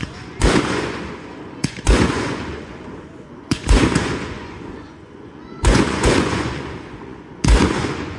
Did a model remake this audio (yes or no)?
yes